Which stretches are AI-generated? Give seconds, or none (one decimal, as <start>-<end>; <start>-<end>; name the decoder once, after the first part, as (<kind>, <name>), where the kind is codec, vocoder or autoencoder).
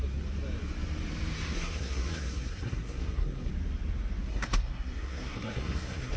1.5-3.5 (codec, SNAC); 4.3-6.2